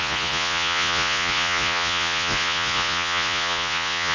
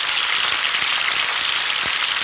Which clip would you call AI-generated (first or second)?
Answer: first